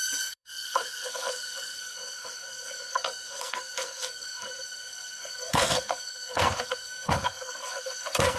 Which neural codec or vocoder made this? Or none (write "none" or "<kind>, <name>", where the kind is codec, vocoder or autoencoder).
codec, SNAC